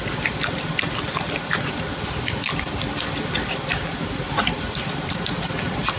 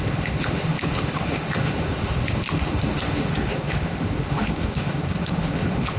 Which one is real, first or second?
first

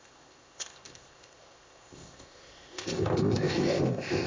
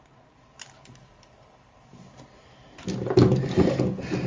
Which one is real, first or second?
second